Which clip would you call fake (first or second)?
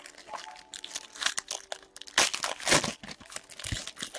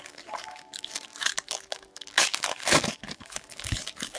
second